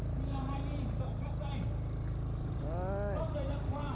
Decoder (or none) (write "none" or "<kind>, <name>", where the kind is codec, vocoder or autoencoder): none